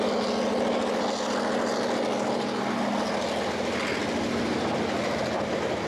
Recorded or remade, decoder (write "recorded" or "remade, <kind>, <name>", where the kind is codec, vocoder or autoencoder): recorded